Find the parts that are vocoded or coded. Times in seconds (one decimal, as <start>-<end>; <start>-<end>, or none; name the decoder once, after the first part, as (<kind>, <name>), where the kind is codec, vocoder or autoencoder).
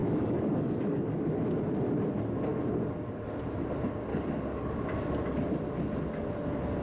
0.0-1.4 (codec, DAC); 4.1-4.7